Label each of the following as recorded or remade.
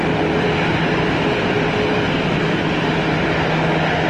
recorded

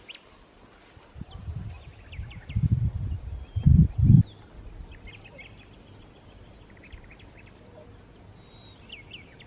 recorded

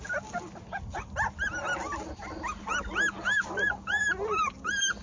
recorded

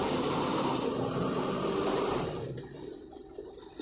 remade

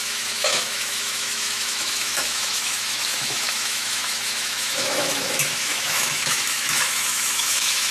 remade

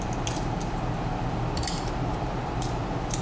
remade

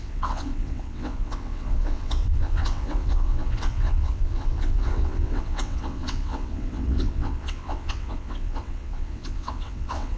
remade